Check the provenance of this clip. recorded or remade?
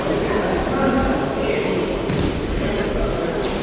recorded